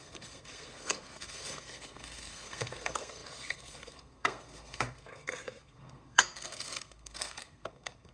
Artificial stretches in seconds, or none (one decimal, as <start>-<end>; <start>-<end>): 0.0-8.1